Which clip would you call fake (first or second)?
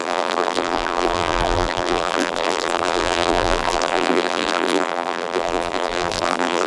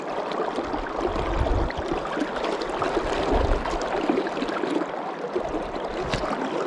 first